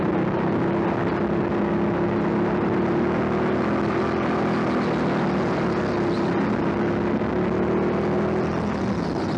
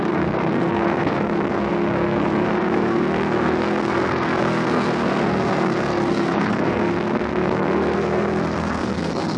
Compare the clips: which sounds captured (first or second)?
first